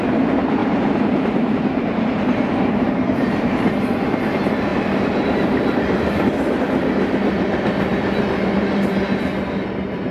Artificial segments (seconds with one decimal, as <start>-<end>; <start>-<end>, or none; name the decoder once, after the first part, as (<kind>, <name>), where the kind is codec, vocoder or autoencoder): 0.6-4.2 (vocoder, BigVGAN v2); 4.7-6.6